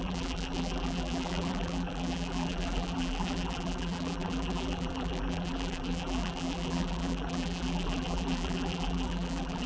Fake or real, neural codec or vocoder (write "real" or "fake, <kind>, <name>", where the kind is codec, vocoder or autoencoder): fake, vocoder, BigVGAN v2